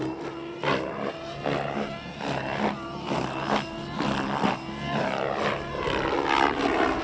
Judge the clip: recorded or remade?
recorded